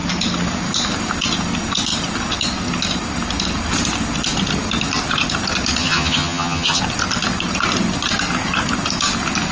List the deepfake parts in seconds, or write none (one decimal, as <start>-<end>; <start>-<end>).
5.8-6.8